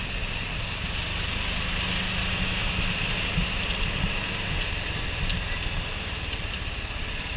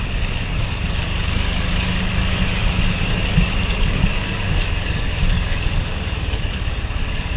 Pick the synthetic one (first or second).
second